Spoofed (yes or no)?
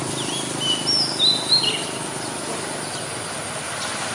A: no